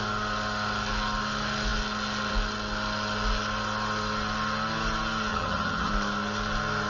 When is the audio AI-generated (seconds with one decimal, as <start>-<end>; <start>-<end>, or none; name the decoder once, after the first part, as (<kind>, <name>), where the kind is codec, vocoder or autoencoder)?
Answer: 5.3-5.9 (vocoder, HiFi-GAN)

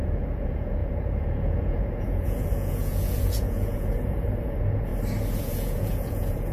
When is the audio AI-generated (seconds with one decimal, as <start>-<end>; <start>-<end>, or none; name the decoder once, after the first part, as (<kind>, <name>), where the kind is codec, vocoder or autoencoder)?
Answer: 0.0-4.9 (vocoder, Vocos); 5.4-6.5

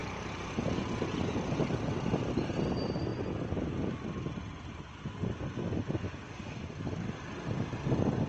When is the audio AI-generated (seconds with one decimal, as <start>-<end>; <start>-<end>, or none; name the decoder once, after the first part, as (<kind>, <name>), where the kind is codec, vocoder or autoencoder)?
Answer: 0.0-2.5 (vocoder, BigVGAN v2)

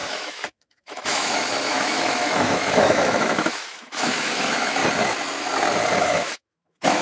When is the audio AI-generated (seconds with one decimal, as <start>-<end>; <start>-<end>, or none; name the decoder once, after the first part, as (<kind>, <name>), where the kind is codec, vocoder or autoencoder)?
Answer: 0.0-4.8 (autoencoder, DAC-VAE); 6.0-7.0

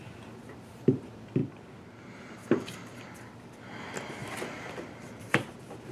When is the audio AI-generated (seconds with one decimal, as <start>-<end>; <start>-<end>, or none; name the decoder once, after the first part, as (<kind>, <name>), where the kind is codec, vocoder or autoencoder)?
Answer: 4.2-4.7 (vocoder, BigVGAN v2)

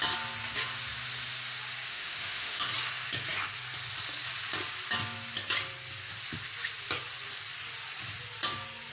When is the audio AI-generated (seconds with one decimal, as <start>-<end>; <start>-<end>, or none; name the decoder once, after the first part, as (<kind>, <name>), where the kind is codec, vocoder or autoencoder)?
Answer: 1.9-2.7 (autoencoder, DAC-VAE)

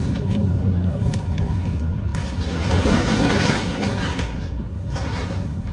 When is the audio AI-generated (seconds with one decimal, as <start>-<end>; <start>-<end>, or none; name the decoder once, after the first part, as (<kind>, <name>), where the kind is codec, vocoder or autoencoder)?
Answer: 0.0-5.7 (codec, SNAC)

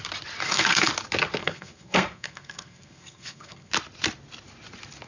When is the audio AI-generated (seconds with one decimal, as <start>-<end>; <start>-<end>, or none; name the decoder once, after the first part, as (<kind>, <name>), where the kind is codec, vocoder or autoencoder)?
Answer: 0.4-0.9 (codec, SNAC); 1.4-3.7